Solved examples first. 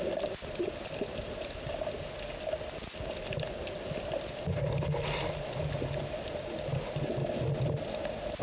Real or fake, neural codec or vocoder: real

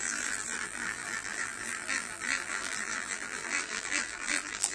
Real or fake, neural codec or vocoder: fake, vocoder, BigVGAN v2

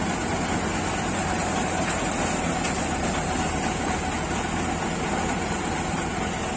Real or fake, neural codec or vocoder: real